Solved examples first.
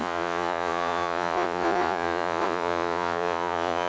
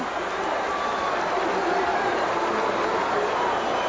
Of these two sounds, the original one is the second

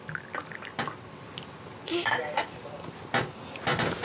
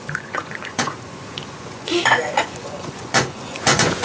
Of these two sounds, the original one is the first